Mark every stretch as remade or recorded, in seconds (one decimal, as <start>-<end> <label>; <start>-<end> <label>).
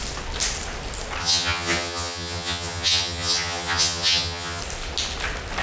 0.0-1.2 recorded; 1.2-4.6 remade; 4.6-5.6 recorded